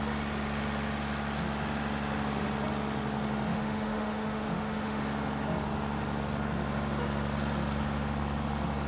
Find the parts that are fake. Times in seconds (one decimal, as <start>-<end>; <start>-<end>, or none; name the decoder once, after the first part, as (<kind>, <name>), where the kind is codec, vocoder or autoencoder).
3.5-5.0 (autoencoder, DAC-VAE)